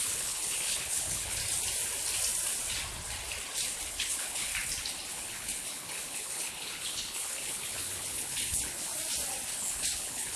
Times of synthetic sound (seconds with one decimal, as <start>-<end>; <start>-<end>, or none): 0.0-1.4; 3.9-4.5; 5.1-8.9; 9.5-10.4